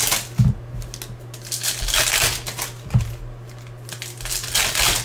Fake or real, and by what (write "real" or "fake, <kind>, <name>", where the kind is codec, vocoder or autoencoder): real